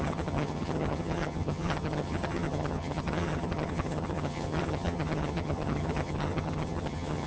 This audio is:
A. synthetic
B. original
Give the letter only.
A